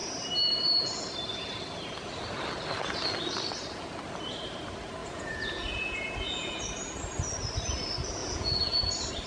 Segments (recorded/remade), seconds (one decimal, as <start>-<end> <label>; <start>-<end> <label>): 0.0-5.0 recorded; 5.0-6.6 remade; 6.6-8.2 recorded; 8.2-8.9 remade; 8.9-9.3 recorded